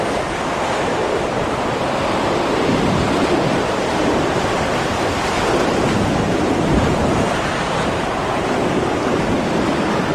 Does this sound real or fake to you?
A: fake